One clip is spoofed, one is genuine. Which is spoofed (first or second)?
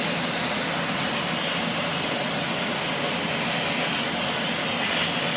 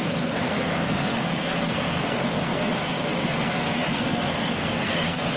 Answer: second